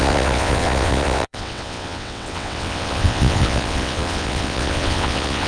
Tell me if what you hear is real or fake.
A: fake